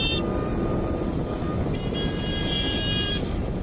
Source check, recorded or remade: remade